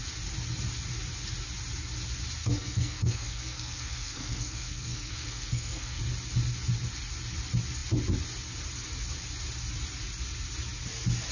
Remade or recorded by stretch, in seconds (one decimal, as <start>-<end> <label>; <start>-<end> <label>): 0.0-2.4 recorded; 2.4-6.0 remade; 6.0-11.3 recorded